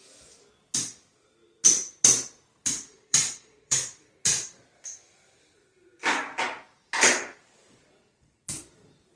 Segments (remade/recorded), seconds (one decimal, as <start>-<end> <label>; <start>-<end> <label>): 0.0-2.9 recorded; 2.9-3.8 remade; 3.8-8.1 recorded; 8.1-8.7 remade; 8.7-9.2 recorded